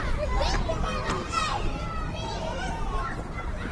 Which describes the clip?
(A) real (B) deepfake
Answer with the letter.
A